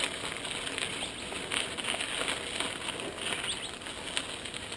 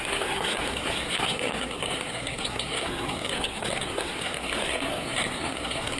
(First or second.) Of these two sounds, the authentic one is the first